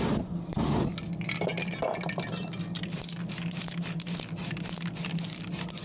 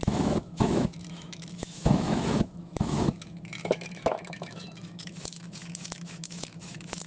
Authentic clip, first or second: first